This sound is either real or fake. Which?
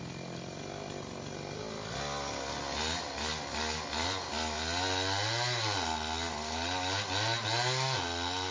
real